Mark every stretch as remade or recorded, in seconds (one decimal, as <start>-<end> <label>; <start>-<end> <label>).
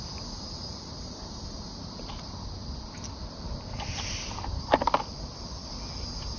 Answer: 0.0-6.4 recorded